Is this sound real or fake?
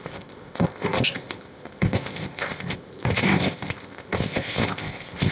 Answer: fake